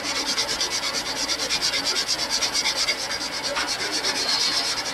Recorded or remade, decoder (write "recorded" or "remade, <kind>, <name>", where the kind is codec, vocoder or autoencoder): remade, vocoder, BigVGAN v2